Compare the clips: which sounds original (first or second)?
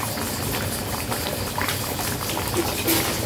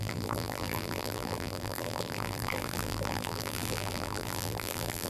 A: first